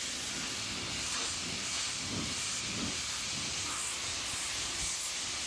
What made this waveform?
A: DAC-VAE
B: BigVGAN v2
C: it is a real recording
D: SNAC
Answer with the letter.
C